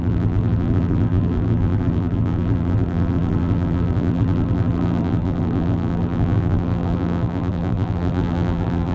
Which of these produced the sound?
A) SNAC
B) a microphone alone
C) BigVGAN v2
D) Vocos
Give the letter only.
C